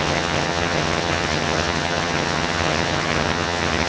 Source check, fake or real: fake